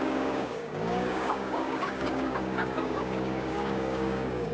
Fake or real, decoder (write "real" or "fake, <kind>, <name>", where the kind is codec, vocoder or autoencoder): fake, codec, DAC